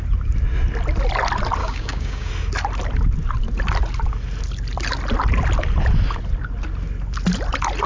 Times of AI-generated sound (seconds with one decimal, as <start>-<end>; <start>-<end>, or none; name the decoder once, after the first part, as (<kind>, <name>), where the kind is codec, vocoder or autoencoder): 1.6-2.3 (codec, DAC)